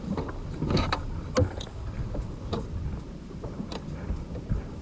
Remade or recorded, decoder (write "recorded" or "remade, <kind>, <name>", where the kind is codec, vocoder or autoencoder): recorded